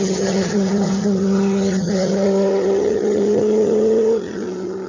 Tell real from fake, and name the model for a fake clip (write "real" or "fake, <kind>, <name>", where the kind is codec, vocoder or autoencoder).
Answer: fake, vocoder, HiFi-GAN